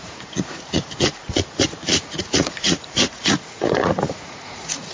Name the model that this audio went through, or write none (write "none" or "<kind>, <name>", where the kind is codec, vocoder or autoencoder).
vocoder, Vocos